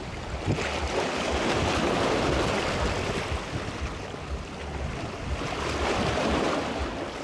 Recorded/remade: recorded